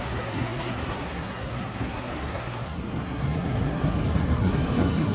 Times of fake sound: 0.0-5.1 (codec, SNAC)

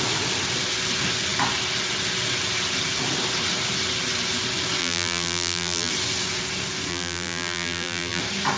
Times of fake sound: 4.8-5.9 (vocoder, BigVGAN v2); 6.9-8.2